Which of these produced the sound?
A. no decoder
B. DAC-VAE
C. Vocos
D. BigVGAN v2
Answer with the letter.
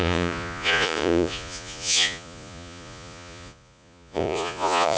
C